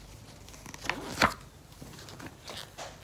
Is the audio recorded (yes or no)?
yes